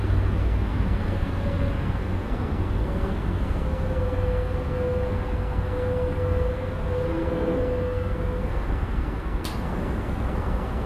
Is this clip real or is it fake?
fake